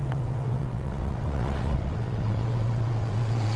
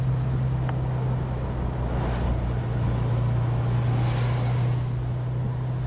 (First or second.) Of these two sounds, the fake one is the first